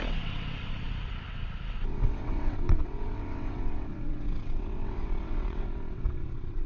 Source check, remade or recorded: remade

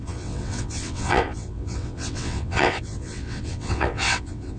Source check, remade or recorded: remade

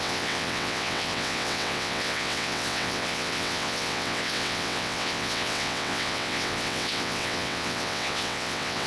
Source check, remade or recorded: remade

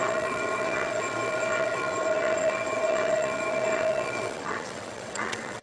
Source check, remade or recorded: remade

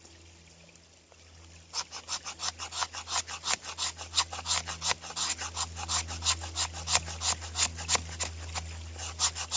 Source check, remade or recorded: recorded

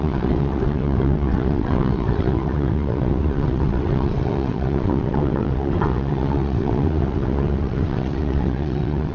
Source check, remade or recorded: remade